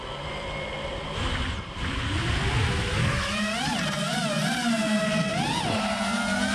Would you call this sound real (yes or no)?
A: yes